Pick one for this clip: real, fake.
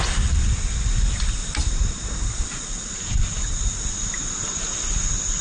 real